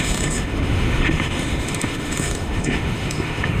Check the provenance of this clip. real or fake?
fake